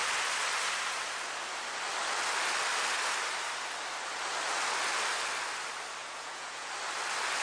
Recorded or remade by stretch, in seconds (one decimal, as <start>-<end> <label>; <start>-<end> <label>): 0.0-6.0 recorded; 6.0-6.7 remade; 6.7-7.4 recorded